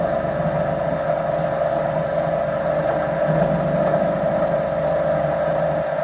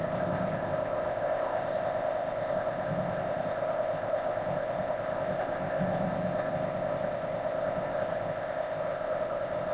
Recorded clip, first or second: first